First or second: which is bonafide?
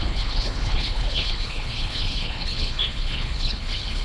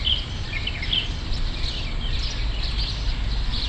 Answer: second